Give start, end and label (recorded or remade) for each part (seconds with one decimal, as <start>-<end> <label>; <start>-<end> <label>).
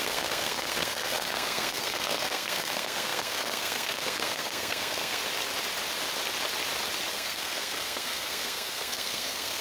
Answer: 0.0-5.2 remade; 5.2-7.1 recorded; 7.1-9.6 remade